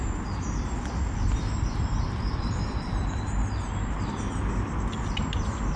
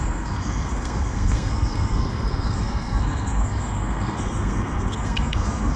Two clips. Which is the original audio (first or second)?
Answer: first